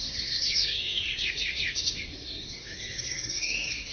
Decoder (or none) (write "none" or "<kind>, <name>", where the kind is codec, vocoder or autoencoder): codec, SNAC